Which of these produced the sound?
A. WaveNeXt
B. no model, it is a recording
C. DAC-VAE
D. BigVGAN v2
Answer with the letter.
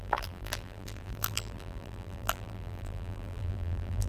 D